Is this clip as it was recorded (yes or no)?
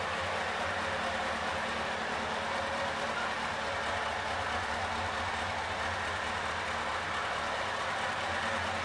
yes